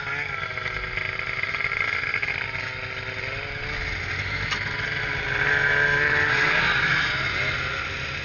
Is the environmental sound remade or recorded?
recorded